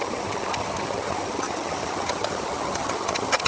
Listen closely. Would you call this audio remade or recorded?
remade